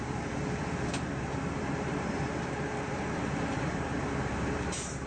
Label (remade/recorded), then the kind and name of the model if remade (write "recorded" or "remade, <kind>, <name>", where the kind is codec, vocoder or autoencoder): remade, vocoder, BigVGAN v2